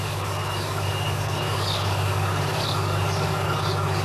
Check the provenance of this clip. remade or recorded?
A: remade